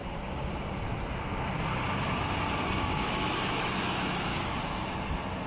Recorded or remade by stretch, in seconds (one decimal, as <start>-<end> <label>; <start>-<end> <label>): 0.0-2.8 recorded; 2.8-4.3 remade; 4.3-5.5 recorded